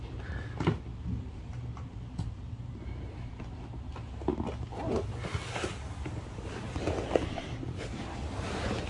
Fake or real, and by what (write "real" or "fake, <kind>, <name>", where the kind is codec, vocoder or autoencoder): real